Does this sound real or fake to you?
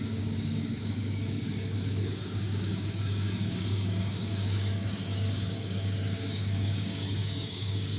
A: fake